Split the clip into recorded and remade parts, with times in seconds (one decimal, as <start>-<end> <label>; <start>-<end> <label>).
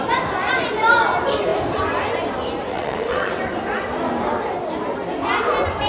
0.0-2.7 recorded; 2.7-3.4 remade; 3.4-5.9 recorded